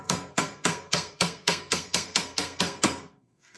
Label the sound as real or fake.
fake